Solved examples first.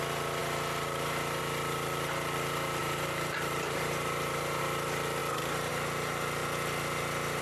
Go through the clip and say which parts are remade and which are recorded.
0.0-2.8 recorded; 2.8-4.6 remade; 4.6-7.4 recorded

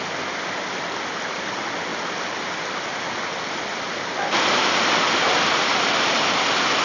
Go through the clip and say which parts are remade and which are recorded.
0.0-1.9 recorded; 1.9-6.0 remade; 6.0-6.8 recorded

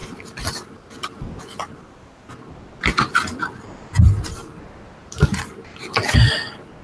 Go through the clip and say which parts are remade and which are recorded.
0.0-5.0 recorded; 5.0-5.8 remade; 5.8-6.8 recorded

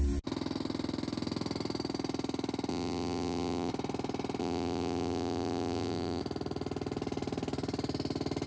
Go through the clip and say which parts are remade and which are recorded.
0.0-2.7 recorded; 2.7-3.7 remade; 3.7-4.4 recorded; 4.4-6.2 remade; 6.2-8.5 recorded

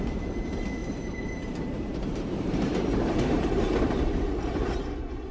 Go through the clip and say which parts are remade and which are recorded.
0.0-0.8 recorded; 0.8-4.0 remade; 4.0-5.3 recorded